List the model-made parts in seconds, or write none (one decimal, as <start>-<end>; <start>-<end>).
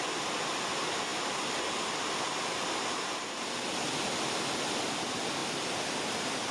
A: none